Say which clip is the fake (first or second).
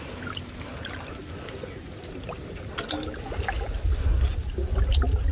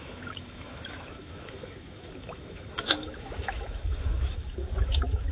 second